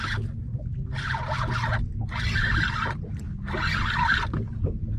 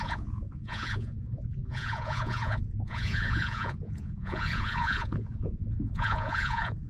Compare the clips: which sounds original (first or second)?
first